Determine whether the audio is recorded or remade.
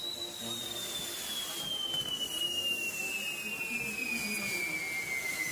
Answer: recorded